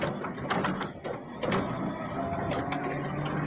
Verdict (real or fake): real